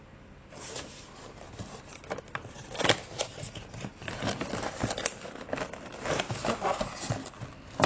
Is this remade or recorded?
recorded